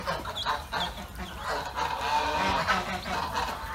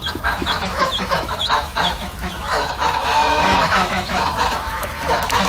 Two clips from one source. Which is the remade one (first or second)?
second